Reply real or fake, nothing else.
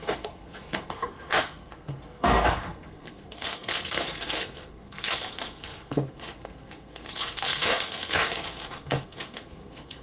fake